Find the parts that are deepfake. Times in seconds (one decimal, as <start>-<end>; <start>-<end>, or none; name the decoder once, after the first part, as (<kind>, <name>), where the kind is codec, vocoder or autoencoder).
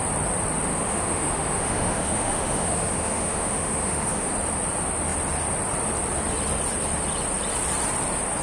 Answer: 0.7-4.3 (autoencoder, DAC-VAE)